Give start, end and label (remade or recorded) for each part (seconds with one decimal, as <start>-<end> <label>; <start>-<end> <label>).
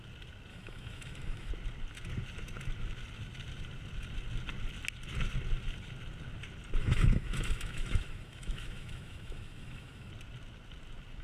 0.0-0.5 recorded; 0.5-1.5 remade; 1.5-6.8 recorded; 6.8-10.1 remade; 10.1-11.2 recorded